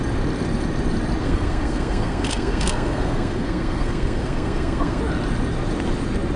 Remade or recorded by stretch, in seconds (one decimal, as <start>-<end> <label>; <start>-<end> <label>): 0.0-1.2 recorded; 1.2-5.0 remade; 5.0-6.4 recorded